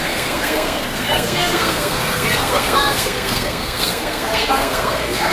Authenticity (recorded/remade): remade